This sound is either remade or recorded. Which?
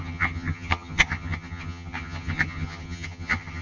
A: remade